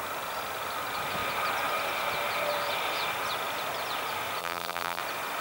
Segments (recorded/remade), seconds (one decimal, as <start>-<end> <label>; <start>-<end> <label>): 0.0-4.4 recorded; 4.4-5.0 remade; 5.0-5.4 recorded